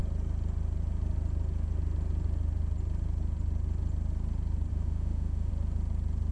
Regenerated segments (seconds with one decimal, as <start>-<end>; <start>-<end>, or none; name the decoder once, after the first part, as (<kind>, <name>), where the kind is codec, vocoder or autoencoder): 4.7-5.5 (autoencoder, DAC-VAE)